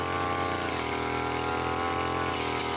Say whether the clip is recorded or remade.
recorded